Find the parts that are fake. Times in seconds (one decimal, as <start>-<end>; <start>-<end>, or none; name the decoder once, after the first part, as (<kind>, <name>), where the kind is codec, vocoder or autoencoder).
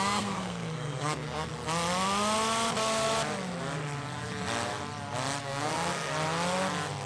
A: 0.0-1.5 (codec, SNAC); 5.4-6.1